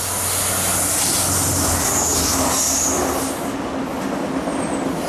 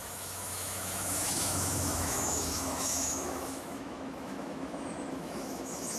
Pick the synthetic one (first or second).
second